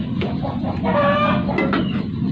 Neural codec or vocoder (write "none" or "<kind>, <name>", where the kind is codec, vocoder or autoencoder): none